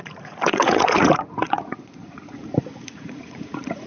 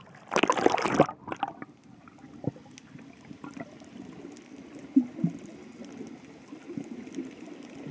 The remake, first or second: first